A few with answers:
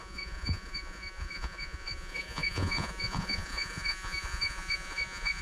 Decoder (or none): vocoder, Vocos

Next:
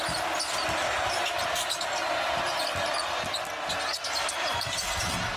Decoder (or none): none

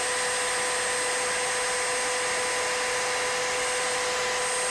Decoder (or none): none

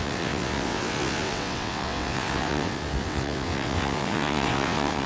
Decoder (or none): vocoder, WaveNeXt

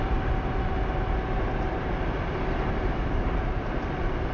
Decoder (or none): none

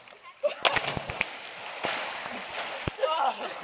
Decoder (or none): none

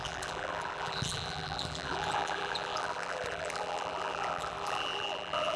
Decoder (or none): vocoder, BigVGAN v2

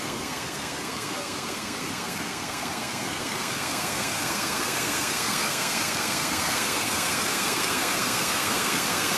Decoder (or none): codec, SNAC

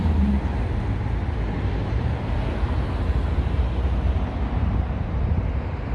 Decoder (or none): vocoder, BigVGAN v2